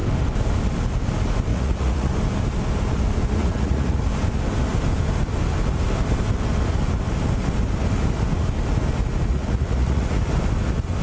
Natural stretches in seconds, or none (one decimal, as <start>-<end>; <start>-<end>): 0.0-1.5; 2.1-3.4; 4.0-9.3; 10.2-11.0